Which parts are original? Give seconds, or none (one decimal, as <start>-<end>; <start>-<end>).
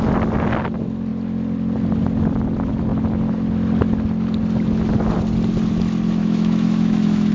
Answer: 0.0-6.2